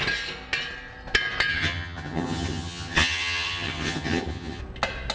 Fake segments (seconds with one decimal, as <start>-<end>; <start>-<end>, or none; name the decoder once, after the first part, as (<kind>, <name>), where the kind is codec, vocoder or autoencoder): 1.5-4.6 (vocoder, HiFi-GAN)